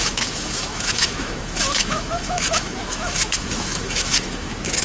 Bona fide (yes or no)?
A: no